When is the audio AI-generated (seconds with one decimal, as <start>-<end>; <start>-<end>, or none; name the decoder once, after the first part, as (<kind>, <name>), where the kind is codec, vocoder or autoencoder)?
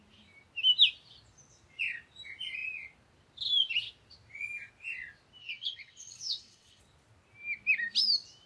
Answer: 5.4-6.8 (vocoder, WaveNeXt)